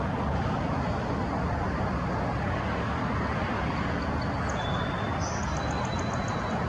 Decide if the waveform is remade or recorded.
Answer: recorded